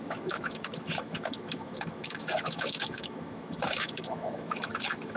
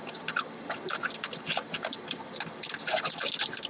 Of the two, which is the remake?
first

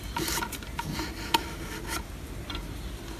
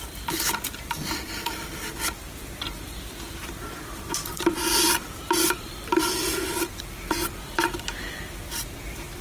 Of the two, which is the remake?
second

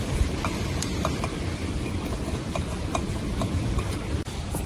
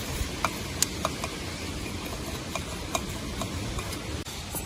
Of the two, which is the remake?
first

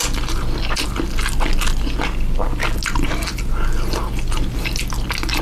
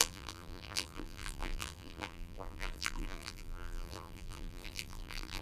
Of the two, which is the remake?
second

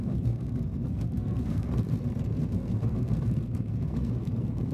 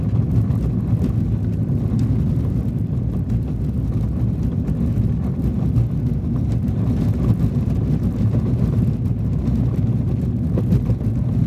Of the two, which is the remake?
first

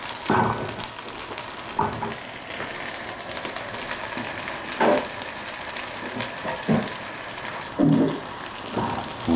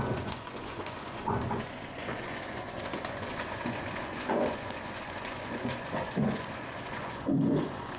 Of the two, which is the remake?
second